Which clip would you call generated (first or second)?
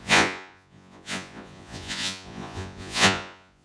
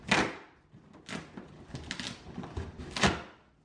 first